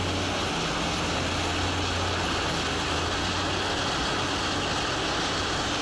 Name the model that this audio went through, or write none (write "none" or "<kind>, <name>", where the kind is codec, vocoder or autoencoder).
none